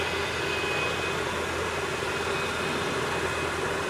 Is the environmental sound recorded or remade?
recorded